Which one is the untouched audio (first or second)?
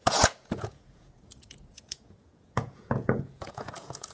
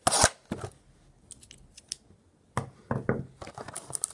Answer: second